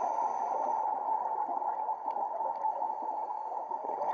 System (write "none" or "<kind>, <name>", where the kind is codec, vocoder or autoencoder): none